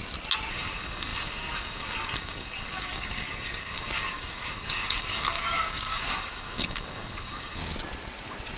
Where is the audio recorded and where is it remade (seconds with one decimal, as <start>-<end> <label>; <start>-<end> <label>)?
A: 0.0-0.5 recorded; 0.5-7.6 remade; 7.6-8.6 recorded